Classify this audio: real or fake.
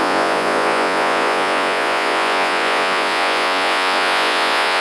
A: fake